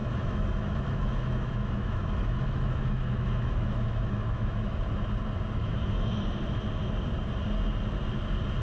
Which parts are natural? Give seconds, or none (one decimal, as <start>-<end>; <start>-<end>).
4.8-5.6; 6.1-8.6

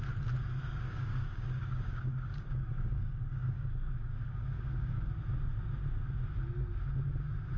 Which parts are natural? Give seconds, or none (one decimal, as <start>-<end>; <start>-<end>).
0.0-0.6; 5.1-7.6

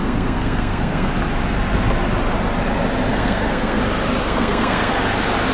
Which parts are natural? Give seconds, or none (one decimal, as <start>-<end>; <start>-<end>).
1.1-3.1; 3.8-4.2; 4.9-5.5